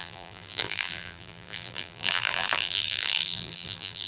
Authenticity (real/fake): fake